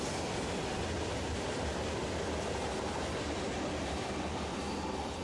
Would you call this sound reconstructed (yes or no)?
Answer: no